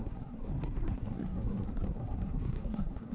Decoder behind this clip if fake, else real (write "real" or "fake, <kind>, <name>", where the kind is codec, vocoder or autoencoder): fake, codec, SNAC